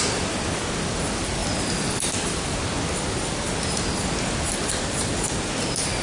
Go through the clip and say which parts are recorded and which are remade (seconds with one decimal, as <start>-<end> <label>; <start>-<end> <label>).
0.0-6.0 recorded